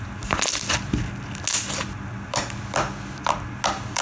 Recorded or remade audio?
recorded